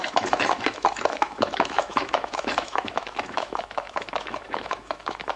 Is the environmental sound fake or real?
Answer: fake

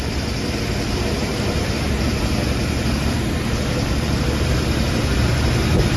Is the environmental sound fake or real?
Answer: fake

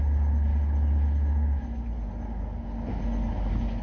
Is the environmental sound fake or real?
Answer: real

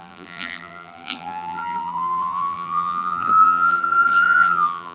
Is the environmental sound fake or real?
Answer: fake